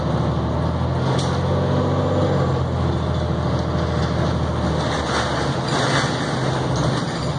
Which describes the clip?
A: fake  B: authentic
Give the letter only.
B